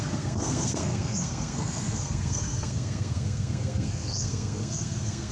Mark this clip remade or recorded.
remade